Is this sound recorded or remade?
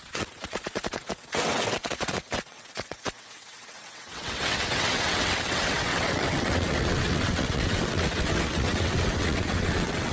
remade